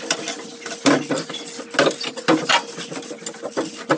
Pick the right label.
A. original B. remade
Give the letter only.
A